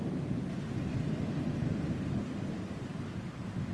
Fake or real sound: real